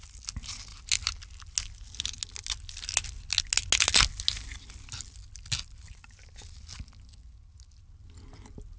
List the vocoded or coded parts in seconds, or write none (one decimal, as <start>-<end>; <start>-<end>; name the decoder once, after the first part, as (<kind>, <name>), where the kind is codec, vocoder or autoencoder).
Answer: none